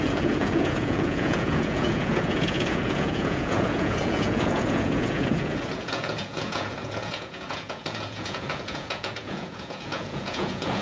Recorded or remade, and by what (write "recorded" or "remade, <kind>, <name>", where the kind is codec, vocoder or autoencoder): remade, vocoder, Vocos